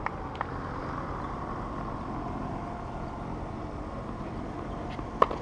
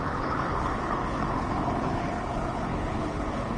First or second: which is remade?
second